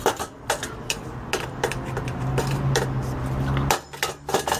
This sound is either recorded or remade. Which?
recorded